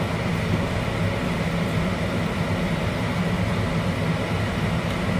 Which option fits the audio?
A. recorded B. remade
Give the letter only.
A